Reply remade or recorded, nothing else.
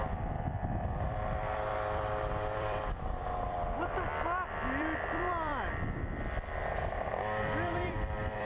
remade